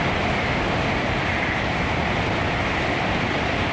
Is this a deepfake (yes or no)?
yes